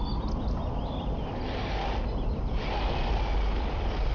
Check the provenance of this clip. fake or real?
real